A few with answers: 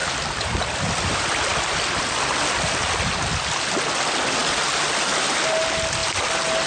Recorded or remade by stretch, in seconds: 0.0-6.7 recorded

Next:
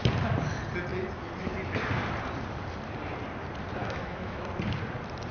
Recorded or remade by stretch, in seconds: 0.0-3.8 recorded; 3.8-4.4 remade; 4.4-5.3 recorded

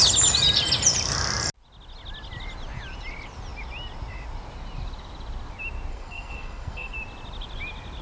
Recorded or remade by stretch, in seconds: 0.0-5.9 recorded; 5.9-6.9 remade; 6.9-8.0 recorded

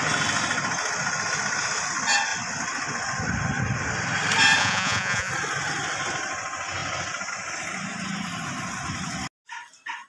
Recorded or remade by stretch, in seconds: 0.0-4.6 recorded; 4.6-5.3 remade; 5.3-10.1 recorded

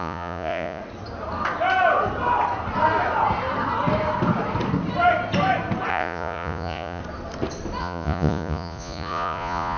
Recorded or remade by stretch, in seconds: 0.0-0.8 remade; 0.8-5.9 recorded; 5.9-7.0 remade; 7.0-7.8 recorded; 7.8-9.8 remade